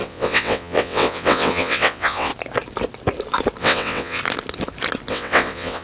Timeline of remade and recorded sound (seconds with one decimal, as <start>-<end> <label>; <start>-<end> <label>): 0.0-2.3 remade; 2.3-3.6 recorded; 3.6-4.2 remade; 4.2-5.1 recorded; 5.1-5.8 remade